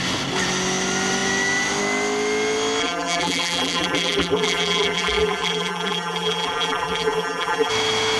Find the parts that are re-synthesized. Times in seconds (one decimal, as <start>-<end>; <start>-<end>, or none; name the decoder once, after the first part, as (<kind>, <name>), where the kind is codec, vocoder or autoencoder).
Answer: 2.8-7.7 (vocoder, BigVGAN v2)

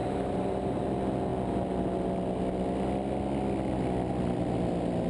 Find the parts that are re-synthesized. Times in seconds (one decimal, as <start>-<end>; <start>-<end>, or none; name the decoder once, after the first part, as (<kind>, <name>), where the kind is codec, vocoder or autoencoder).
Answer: 0.0-0.8 (vocoder, BigVGAN v2)

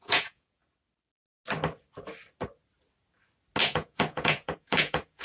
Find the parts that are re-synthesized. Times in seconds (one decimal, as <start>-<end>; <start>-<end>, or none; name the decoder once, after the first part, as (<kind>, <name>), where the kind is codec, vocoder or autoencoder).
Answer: 0.0-0.6 (vocoder, Vocos); 3.6-5.2

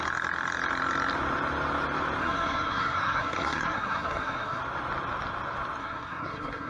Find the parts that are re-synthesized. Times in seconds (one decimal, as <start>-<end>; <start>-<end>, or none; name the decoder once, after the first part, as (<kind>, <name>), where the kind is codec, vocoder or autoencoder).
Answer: 2.2-4.6 (codec, SNAC); 5.8-6.7

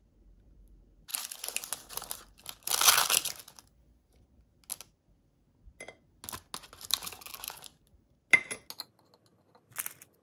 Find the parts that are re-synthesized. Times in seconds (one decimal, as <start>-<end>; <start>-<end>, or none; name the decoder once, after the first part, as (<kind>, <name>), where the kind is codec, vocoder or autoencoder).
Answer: none

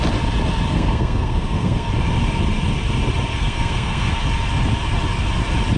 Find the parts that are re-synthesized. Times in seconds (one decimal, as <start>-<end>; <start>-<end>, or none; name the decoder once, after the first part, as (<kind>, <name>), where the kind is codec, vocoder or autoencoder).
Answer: 0.7-1.9 (codec, SNAC); 3.3-4.1

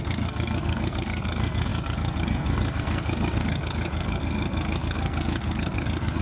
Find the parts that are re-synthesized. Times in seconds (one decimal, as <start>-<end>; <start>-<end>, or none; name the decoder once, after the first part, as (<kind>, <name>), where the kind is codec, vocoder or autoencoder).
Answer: 0.0-6.2 (codec, SNAC)